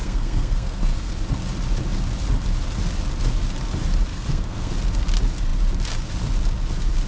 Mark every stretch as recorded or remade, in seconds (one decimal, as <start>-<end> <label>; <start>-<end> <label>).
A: 0.0-1.1 remade; 1.1-4.1 recorded; 4.1-4.7 remade; 4.7-7.1 recorded